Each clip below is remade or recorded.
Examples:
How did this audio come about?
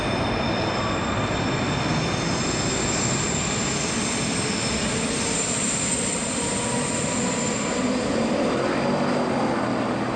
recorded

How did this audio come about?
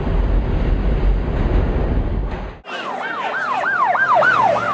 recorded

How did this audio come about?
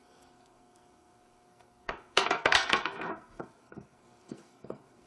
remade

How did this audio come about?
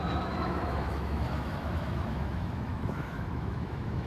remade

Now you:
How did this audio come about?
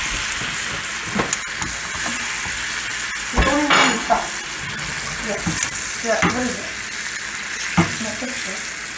recorded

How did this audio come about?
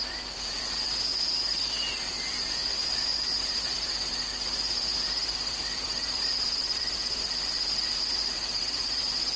remade